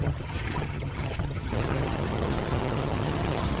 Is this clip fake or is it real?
fake